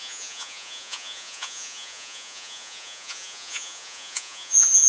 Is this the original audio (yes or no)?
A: no